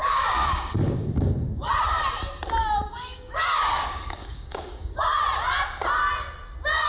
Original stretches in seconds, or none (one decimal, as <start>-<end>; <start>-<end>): 1.7-2.6; 5.1-6.9